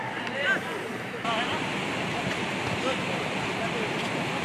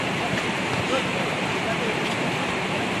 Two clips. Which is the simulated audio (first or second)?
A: second